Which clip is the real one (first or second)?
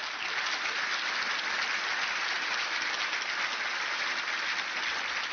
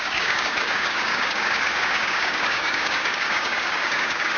first